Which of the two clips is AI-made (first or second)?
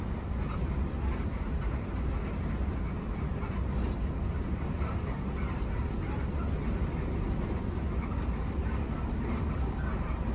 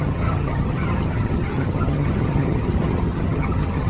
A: second